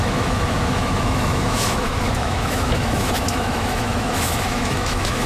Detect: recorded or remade remade